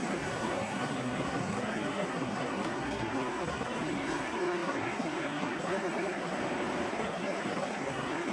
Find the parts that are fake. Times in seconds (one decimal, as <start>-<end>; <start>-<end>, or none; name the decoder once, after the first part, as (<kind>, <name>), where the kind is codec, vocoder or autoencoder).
0.0-6.4 (codec, SNAC); 6.9-8.3